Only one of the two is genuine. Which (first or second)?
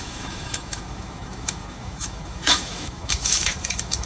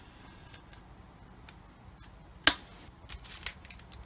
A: second